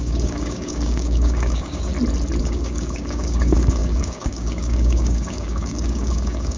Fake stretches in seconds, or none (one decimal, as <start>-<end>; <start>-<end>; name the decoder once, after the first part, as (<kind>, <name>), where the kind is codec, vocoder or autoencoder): 0.0-1.9 (codec, DAC); 2.4-6.6